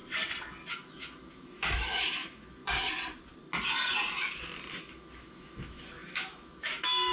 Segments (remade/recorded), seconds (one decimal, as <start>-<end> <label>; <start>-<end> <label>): 0.0-0.7 recorded; 0.7-2.6 remade; 2.6-4.8 recorded; 4.8-7.1 remade